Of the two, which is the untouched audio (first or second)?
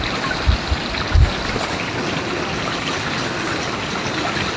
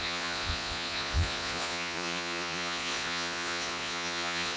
first